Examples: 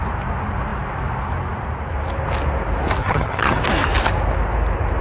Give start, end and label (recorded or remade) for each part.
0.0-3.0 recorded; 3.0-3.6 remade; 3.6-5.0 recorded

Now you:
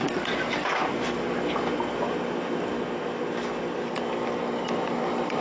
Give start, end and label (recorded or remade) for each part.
0.0-5.4 recorded

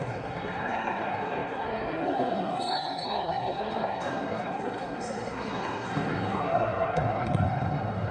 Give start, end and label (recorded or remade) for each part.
0.0-8.1 remade

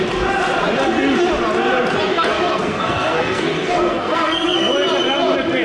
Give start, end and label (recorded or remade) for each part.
0.0-2.1 recorded; 2.1-4.7 remade; 4.7-5.6 recorded

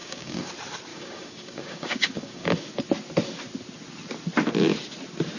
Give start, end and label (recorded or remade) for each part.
0.0-0.5 remade; 0.5-0.9 recorded; 0.9-2.7 remade; 2.7-5.4 recorded

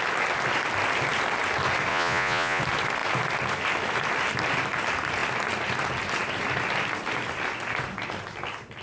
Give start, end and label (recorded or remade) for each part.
0.0-1.9 recorded; 1.9-2.6 remade; 2.6-8.8 recorded

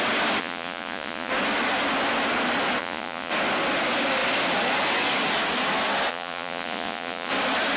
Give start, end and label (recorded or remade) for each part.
0.0-0.4 recorded; 0.4-1.3 remade; 1.3-2.8 recorded; 2.8-3.3 remade; 3.3-6.1 recorded; 6.1-7.3 remade; 7.3-7.8 recorded

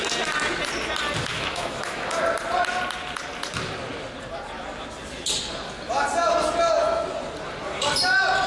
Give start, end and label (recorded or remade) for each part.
0.0-1.3 recorded; 1.3-2.2 remade; 2.2-8.5 recorded